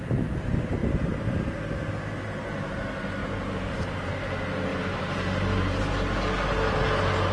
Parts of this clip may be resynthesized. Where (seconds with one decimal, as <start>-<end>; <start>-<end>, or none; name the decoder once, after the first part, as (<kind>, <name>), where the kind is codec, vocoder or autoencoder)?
3.2-4.1 (vocoder, BigVGAN v2); 4.7-5.8